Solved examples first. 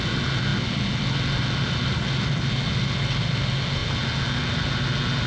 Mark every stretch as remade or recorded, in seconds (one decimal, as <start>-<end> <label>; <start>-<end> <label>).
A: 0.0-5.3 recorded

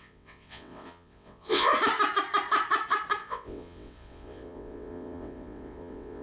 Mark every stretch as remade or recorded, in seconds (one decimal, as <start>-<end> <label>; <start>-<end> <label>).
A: 0.0-1.7 remade; 1.7-3.2 recorded; 3.2-6.2 remade

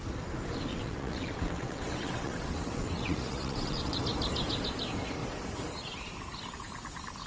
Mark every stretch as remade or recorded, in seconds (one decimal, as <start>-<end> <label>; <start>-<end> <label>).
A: 0.0-0.7 recorded; 0.7-4.0 remade; 4.0-7.3 recorded

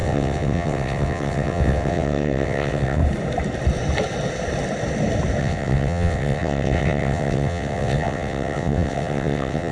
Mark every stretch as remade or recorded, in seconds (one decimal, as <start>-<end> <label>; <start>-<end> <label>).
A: 0.0-3.0 remade; 3.0-5.4 recorded; 5.4-9.7 remade